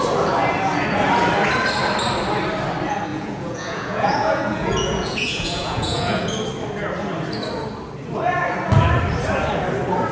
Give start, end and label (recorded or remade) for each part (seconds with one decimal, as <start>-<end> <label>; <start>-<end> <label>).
0.0-3.1 recorded; 3.1-6.2 remade; 6.2-10.1 recorded